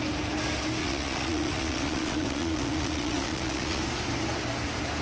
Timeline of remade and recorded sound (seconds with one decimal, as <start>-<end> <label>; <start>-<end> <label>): 0.0-0.8 recorded; 0.8-3.8 remade; 3.8-5.0 recorded